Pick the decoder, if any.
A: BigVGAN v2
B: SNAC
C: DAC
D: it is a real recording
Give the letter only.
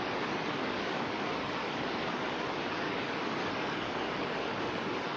C